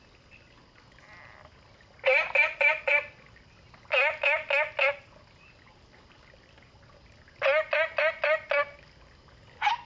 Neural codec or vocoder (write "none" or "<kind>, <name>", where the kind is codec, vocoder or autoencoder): none